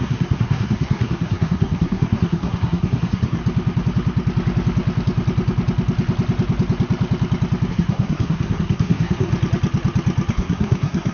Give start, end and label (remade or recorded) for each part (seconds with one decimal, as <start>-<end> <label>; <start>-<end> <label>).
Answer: 0.0-3.4 remade; 3.4-7.7 recorded; 7.7-9.3 remade; 9.3-10.3 recorded; 10.3-11.1 remade